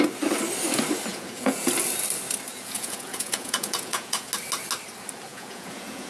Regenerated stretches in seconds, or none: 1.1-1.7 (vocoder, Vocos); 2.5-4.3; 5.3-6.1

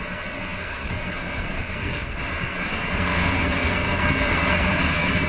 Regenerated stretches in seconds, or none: 0.0-5.3 (codec, SNAC)

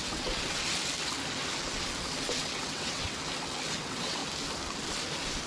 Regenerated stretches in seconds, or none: 0.0-0.6 (vocoder, WaveNeXt); 2.3-3.2; 3.8-4.2

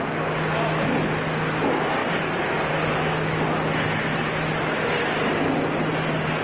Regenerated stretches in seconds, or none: 2.0-2.7 (vocoder, BigVGAN v2)

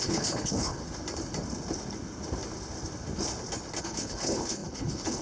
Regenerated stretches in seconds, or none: 0.0-0.8 (codec, HILCodec); 3.8-5.2

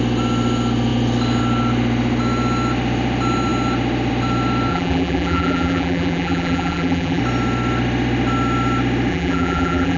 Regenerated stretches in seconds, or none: 4.7-7.2 (vocoder, BigVGAN v2); 9.1-10.0

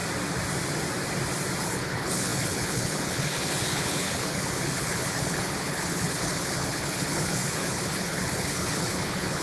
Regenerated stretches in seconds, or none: 1.6-9.4 (codec, HILCodec)

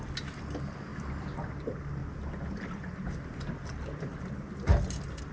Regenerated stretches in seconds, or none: 0.9-1.5 (vocoder, BigVGAN v2)